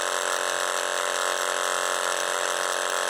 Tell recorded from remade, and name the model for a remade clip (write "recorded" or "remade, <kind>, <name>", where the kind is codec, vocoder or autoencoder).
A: recorded